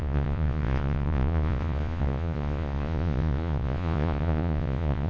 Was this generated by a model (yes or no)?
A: yes